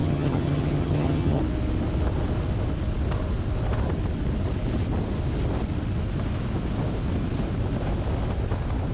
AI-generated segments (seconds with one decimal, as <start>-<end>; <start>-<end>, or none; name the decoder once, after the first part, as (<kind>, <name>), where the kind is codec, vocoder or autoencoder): 0.0-1.4 (vocoder, HiFi-GAN)